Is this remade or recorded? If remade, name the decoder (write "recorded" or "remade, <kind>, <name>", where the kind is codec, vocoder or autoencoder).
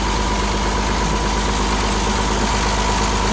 recorded